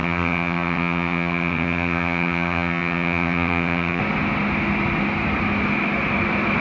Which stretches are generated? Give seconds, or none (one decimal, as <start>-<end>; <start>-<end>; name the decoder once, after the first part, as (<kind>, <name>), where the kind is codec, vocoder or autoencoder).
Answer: 0.0-4.0 (vocoder, HiFi-GAN)